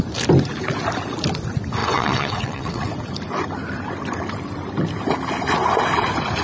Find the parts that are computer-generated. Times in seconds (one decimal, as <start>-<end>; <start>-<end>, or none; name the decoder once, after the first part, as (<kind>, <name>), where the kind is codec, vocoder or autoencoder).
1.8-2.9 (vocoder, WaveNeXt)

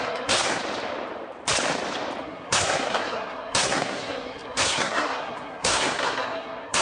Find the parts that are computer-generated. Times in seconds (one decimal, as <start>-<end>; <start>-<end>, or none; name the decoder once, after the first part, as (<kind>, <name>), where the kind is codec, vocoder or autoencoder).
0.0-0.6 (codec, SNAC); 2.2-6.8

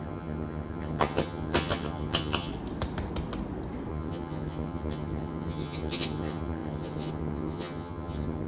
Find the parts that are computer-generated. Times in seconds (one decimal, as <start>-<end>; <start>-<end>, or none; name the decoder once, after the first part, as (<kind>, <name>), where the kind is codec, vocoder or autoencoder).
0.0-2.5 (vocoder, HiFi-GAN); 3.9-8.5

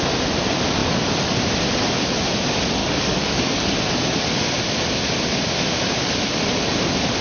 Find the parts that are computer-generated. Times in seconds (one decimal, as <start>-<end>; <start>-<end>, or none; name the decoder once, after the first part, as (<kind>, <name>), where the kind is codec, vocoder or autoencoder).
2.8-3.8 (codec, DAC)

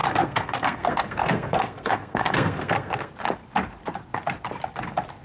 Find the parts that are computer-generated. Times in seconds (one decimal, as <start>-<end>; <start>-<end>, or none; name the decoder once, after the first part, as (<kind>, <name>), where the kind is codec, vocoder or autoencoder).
0.0-3.1 (codec, SNAC)